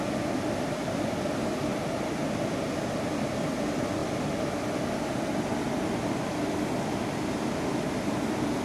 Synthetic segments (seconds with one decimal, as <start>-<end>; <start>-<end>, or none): 0.0-1.7; 2.9-4.0; 5.1-8.6